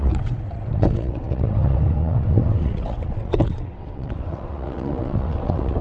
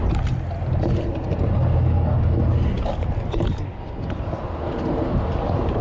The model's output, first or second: first